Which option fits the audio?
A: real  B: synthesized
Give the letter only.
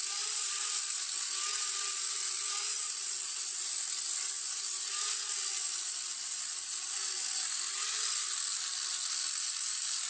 A